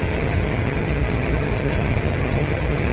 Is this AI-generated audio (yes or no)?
yes